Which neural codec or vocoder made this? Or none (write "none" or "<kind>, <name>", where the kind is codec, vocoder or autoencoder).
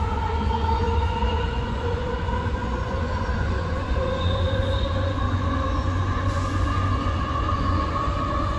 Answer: vocoder, Vocos